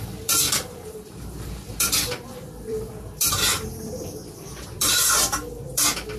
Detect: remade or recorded remade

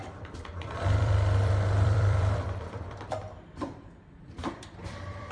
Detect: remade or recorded remade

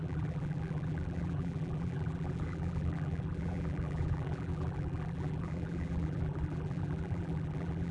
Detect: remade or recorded remade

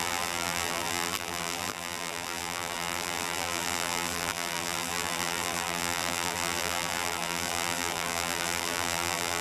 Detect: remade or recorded remade